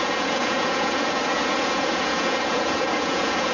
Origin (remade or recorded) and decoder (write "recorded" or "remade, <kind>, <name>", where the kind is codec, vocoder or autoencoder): remade, vocoder, Vocos